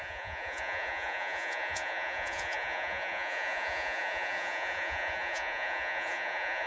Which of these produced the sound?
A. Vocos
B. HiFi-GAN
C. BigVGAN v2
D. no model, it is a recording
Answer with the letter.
A